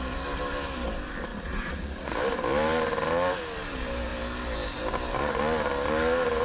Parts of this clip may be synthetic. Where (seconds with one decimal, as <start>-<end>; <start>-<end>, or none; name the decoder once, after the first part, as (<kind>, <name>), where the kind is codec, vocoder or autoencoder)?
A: 1.3-2.2 (vocoder, Vocos)